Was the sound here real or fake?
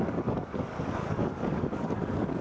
fake